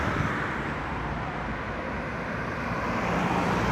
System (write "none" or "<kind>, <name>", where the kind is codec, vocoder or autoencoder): none